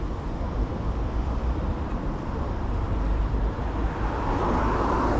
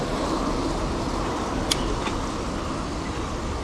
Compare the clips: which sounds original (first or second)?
second